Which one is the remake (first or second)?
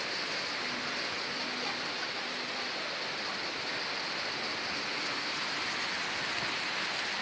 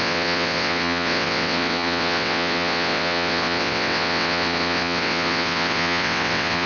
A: second